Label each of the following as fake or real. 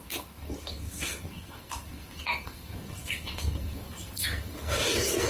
fake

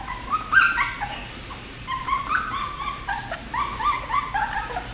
real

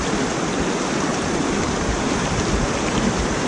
real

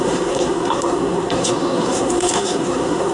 fake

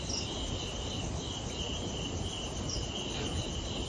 real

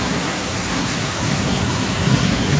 fake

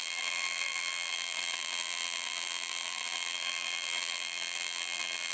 fake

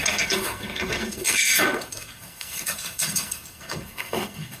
fake